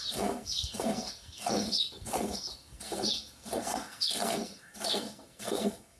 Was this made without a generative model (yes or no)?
no